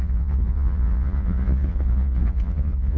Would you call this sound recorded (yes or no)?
no